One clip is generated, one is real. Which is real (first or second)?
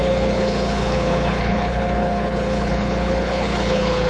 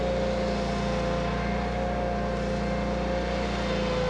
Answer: second